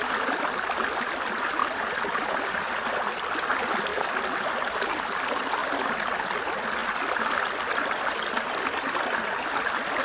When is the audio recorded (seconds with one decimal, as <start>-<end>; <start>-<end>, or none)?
0.0-1.6; 2.7-3.9; 4.5-5.6; 6.3-6.8; 8.2-10.0